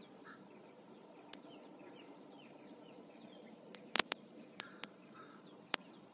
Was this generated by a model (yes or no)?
yes